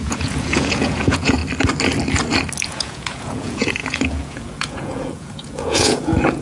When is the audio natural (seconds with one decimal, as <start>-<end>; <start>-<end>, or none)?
1.4-2.7